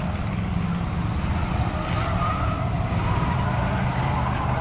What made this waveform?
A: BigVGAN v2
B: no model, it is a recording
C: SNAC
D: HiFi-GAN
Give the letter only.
B